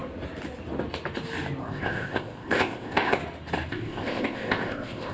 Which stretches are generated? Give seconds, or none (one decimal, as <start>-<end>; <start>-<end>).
1.6-3.2; 3.7-5.1